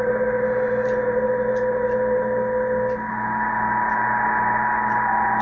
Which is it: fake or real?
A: real